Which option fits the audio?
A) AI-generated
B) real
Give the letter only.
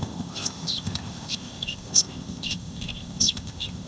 A